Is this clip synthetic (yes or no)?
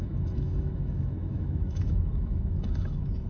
yes